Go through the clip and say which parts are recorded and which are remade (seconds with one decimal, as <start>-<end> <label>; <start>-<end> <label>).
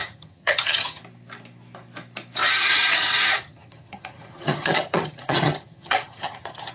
0.0-1.0 remade; 1.0-2.4 recorded; 2.4-6.7 remade